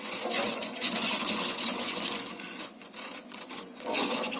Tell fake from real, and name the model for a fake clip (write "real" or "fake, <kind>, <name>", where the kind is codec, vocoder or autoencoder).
fake, vocoder, Vocos